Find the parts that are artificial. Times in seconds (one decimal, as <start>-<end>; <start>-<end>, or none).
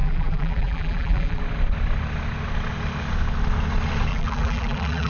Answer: 0.0-1.4; 4.1-5.1